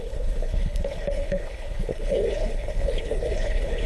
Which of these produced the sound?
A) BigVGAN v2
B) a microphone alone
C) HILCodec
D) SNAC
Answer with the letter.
C